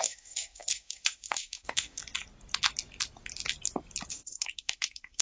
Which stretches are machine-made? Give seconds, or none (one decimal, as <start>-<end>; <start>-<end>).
0.0-2.0; 4.1-5.2